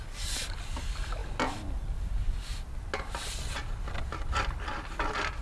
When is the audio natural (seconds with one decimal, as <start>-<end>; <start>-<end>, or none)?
0.0-5.4

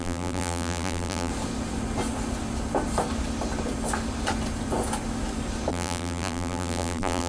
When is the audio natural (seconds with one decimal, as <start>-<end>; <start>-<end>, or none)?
1.3-5.7

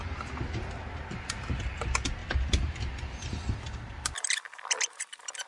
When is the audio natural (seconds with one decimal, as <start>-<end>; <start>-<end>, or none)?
0.0-5.5

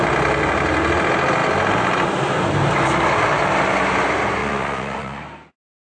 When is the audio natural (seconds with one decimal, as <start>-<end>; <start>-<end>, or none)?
0.0-4.4; 5.2-5.9

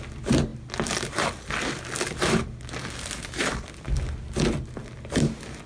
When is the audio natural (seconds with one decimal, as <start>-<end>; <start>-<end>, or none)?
0.0-5.7

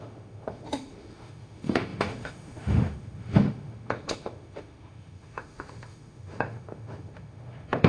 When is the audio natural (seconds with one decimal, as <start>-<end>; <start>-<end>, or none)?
none

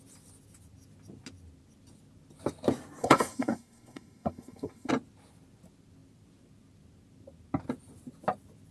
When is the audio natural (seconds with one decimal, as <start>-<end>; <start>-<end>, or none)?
0.0-3.0; 4.9-8.7

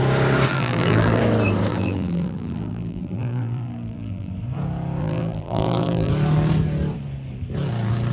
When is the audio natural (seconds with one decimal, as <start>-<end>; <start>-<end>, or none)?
0.0-0.5; 1.2-1.7; 4.3-5.0; 6.1-8.1